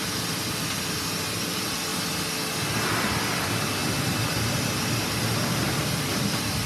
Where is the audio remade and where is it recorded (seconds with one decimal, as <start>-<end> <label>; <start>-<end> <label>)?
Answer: 0.0-6.7 recorded